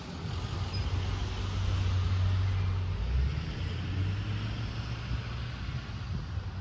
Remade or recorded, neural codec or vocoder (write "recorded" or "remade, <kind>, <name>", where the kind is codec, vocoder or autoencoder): recorded